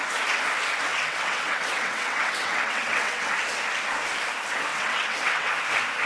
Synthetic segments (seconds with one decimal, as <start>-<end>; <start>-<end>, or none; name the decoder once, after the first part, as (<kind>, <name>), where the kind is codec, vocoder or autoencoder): 0.9-3.3 (vocoder, WaveNeXt); 4.7-5.5